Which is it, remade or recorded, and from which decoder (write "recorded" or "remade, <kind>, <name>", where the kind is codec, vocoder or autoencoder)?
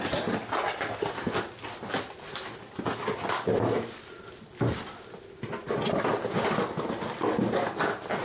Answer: recorded